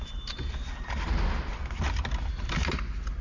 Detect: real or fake real